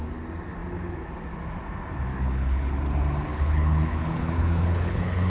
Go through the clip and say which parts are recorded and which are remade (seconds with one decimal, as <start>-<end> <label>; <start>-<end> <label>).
0.0-2.1 recorded; 2.1-2.8 remade; 2.8-3.3 recorded; 3.3-5.3 remade